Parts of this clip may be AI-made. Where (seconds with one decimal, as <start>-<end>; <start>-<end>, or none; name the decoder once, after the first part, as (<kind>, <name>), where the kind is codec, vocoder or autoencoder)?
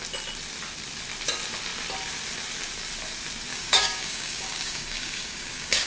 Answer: 3.5-5.9 (codec, DAC)